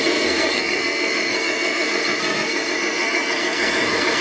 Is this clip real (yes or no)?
no